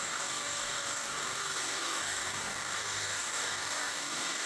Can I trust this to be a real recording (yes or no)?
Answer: no